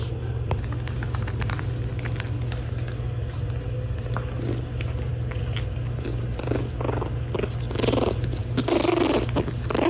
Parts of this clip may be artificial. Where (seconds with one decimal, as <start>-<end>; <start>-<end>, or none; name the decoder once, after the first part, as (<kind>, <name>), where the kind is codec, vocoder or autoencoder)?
none